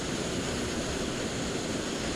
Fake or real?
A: real